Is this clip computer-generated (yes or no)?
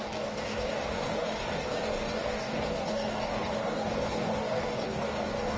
yes